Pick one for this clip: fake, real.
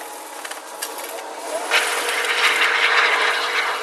real